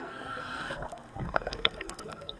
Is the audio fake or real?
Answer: fake